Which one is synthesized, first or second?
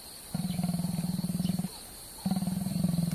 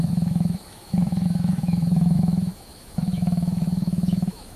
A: second